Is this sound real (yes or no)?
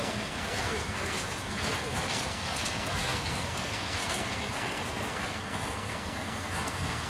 no